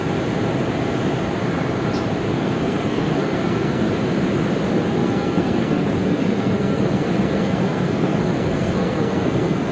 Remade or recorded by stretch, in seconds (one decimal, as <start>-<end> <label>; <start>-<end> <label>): 0.0-2.3 recorded; 2.3-3.9 remade; 3.9-5.0 recorded; 5.0-9.7 remade